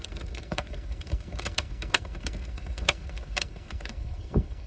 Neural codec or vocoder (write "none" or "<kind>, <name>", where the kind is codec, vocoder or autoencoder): codec, SNAC